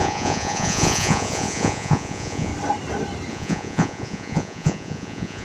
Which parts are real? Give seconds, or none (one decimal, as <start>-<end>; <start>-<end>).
2.5-3.3